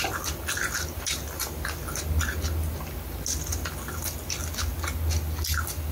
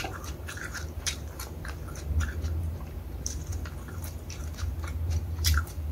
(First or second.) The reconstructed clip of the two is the second